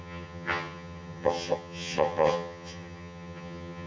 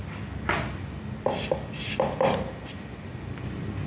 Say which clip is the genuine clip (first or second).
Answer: second